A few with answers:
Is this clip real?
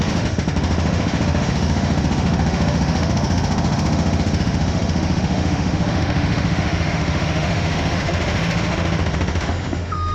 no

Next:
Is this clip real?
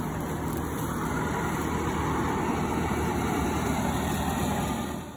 yes